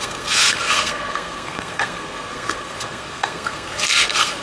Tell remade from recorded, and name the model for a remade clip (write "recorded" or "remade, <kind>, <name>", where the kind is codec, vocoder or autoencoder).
remade, codec, SNAC